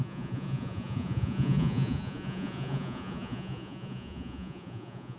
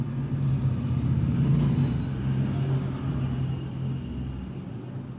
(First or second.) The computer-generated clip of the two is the first